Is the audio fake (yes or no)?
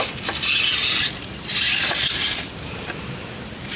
no